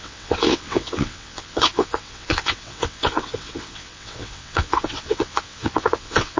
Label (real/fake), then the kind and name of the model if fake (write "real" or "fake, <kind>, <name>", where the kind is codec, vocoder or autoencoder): fake, vocoder, WaveNeXt